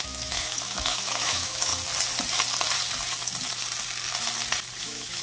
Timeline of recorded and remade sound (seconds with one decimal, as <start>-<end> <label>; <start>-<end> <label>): 0.0-1.7 remade; 1.7-4.8 recorded; 4.8-5.2 remade